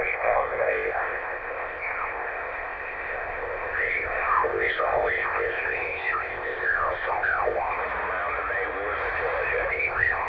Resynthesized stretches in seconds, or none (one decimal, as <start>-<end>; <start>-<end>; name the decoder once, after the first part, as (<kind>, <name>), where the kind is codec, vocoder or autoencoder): 0.0-7.8 (codec, ZipCodec); 9.7-10.3